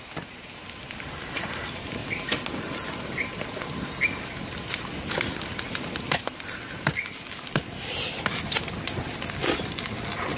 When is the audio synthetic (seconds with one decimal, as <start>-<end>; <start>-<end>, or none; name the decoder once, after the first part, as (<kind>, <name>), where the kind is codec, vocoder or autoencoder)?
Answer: none